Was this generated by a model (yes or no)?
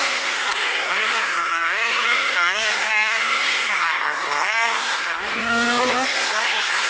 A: yes